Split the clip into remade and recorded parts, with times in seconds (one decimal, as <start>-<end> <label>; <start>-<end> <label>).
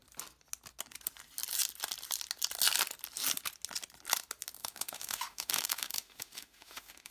0.0-4.6 recorded; 4.6-7.1 remade